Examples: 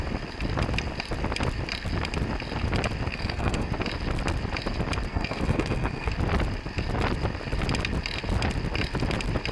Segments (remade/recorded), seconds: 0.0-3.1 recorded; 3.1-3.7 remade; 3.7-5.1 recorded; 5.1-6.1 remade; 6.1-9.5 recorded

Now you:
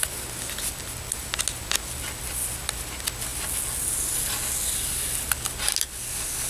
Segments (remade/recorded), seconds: 0.0-6.5 recorded

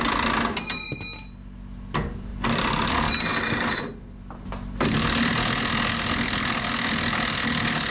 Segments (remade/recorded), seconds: 0.0-7.9 recorded